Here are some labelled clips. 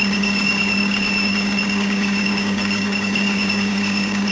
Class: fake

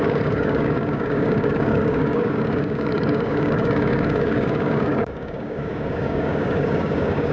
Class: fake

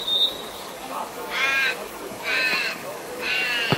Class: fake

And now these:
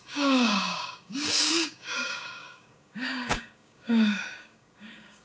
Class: fake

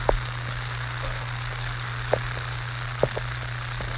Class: real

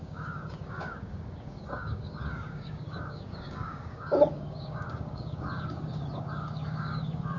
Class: fake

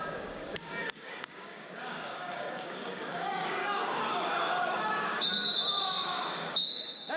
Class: fake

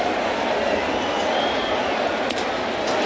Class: real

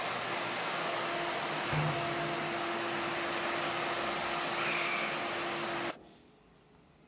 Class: real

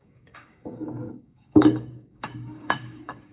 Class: fake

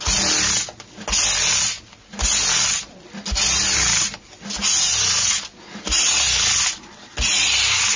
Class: real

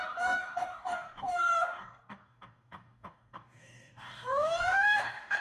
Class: fake